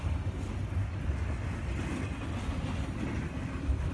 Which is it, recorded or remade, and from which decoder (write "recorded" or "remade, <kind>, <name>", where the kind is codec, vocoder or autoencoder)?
recorded